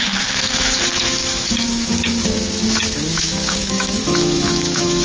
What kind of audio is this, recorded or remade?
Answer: remade